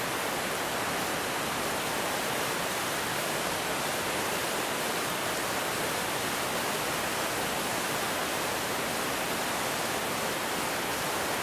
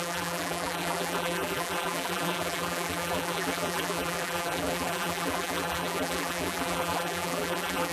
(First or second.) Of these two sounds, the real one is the first